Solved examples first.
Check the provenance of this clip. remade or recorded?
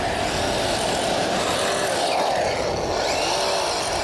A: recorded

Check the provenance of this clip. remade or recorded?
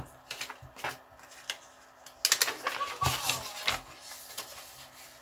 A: recorded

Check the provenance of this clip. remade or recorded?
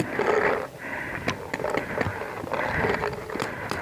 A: recorded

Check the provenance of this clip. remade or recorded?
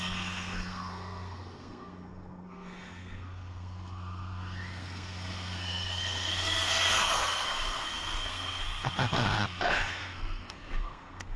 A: remade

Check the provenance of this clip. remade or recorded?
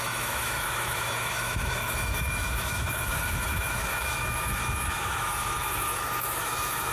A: remade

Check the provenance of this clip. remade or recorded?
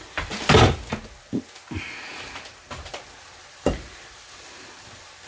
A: recorded